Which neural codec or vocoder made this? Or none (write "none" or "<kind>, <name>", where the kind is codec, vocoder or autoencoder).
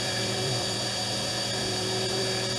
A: vocoder, BigVGAN v2